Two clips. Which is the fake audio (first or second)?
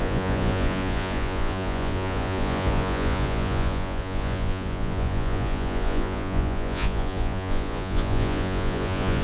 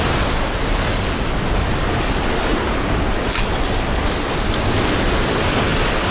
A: first